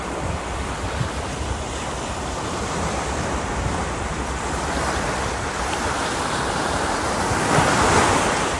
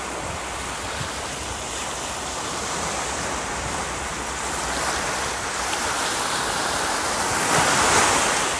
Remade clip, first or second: first